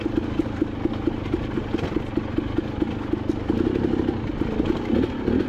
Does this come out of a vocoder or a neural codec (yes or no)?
no